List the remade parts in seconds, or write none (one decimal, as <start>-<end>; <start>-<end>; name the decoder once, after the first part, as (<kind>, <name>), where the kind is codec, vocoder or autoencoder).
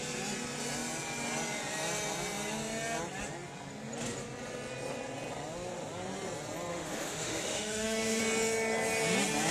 6.7-8.2 (autoencoder, DAC-VAE)